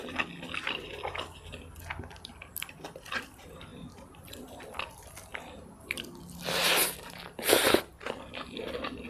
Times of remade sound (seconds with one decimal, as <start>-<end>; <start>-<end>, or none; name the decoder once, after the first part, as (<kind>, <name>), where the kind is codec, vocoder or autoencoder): none